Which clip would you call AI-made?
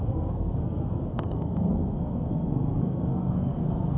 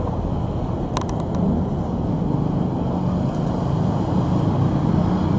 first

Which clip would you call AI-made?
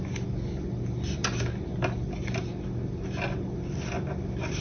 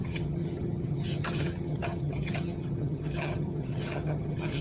second